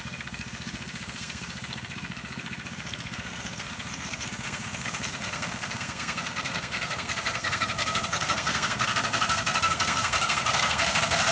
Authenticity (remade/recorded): remade